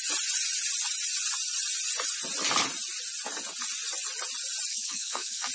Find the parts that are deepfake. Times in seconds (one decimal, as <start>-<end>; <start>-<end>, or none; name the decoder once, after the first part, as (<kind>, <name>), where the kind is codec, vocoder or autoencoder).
4.7-5.5 (codec, SNAC)